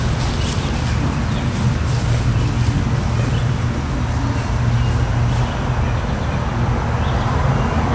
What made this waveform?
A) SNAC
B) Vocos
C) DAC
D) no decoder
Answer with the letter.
D